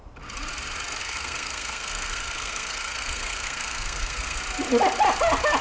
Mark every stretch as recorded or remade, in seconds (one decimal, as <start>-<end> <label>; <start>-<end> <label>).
0.0-1.0 recorded; 1.0-4.4 remade; 4.4-5.6 recorded